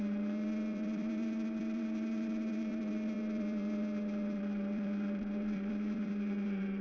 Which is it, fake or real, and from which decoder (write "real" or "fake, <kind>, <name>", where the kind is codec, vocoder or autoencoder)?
fake, vocoder, BigVGAN v2